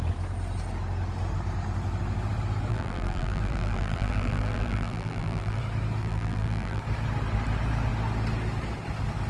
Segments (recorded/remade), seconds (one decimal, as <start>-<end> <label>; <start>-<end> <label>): 0.0-2.7 recorded; 2.7-5.6 remade; 5.6-6.0 recorded; 6.0-6.8 remade; 6.8-9.3 recorded